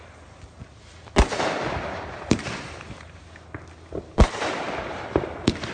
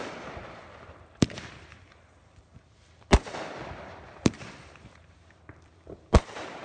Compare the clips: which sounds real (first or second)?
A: first